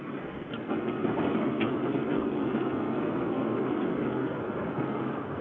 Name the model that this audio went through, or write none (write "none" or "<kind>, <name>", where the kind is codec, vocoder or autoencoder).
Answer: codec, SNAC